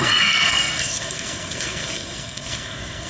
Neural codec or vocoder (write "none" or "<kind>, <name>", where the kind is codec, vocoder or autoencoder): codec, SNAC